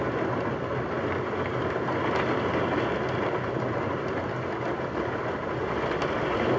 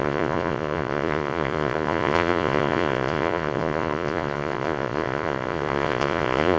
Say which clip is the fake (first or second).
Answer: second